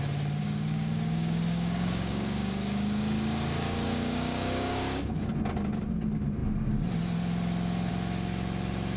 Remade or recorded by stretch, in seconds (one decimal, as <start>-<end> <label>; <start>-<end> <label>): 0.0-0.4 recorded; 0.4-5.3 remade; 5.3-9.0 recorded